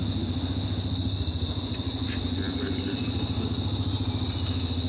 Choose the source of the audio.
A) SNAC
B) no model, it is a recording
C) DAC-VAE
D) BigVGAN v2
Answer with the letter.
B